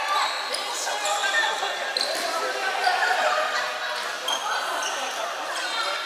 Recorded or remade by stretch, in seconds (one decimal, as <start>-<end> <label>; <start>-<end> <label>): 0.0-6.1 recorded